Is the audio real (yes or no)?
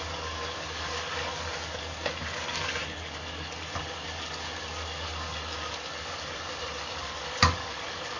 no